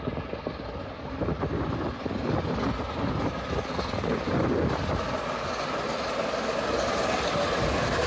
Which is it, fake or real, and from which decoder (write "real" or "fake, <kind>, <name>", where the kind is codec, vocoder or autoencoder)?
real